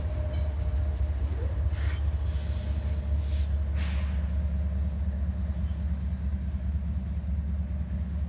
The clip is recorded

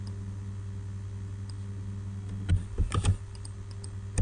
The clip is recorded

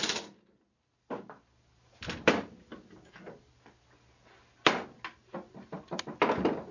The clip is recorded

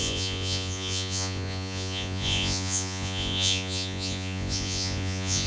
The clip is remade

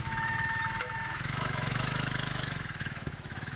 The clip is remade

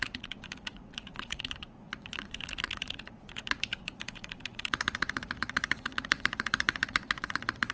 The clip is remade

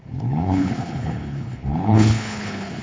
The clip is remade